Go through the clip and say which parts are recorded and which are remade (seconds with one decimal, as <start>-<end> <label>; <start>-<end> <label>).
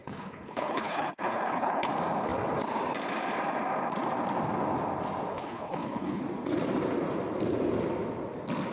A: 0.0-1.9 remade; 1.9-5.3 recorded; 5.3-6.2 remade; 6.2-8.7 recorded